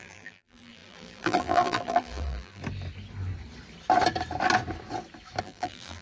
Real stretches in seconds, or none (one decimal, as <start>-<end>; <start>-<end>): 2.6-5.4